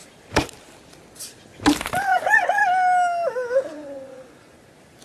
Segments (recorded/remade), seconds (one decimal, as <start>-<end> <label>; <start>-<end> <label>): 0.0-2.1 recorded; 2.1-2.6 remade; 2.6-3.7 recorded; 3.7-4.6 remade; 4.6-5.0 recorded